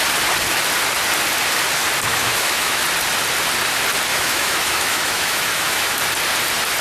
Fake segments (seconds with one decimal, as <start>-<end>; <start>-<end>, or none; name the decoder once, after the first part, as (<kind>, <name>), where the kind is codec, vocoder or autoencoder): 2.1-2.8 (autoencoder, DAC-VAE); 4.1-6.0

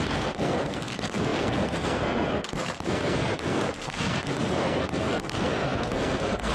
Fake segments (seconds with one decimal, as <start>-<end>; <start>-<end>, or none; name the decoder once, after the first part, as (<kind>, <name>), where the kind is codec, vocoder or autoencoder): 0.0-6.5 (codec, SNAC)

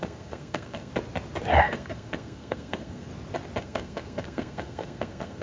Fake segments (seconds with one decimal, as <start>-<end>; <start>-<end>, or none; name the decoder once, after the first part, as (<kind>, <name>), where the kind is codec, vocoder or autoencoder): 0.0-0.9 (codec, SNAC); 1.6-3.1; 3.6-5.4

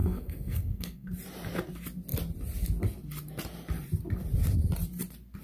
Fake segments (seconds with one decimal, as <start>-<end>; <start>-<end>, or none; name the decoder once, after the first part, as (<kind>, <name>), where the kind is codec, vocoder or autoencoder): 0.0-1.1 (codec, SNAC)

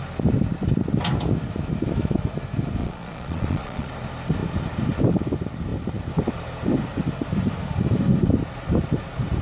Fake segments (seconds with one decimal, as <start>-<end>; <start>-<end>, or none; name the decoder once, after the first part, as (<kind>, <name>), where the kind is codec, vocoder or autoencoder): 2.8-3.9 (vocoder, Vocos)